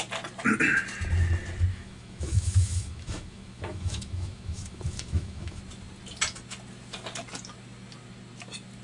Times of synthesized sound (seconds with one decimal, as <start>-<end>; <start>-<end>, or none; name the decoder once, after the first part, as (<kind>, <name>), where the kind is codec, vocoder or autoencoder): 1.7-5.6 (autoencoder, DAC-VAE)